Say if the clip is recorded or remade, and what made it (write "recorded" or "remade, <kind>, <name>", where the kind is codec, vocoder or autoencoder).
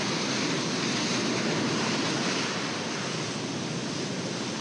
recorded